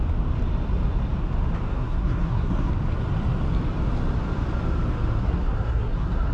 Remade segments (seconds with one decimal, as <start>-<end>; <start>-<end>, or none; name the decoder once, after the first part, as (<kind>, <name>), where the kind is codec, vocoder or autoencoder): 1.7-2.7 (codec, SNAC); 5.2-6.3